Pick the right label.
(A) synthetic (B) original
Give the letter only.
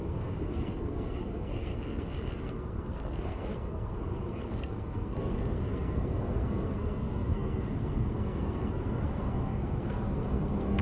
A